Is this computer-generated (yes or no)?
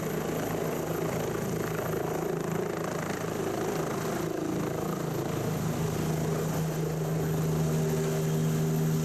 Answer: no